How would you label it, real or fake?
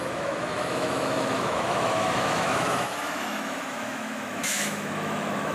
fake